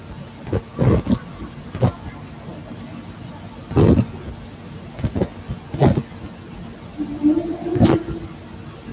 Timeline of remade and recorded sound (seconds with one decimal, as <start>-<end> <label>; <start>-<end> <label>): 0.0-6.9 recorded; 6.9-8.3 remade; 8.3-8.9 recorded